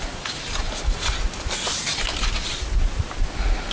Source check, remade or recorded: recorded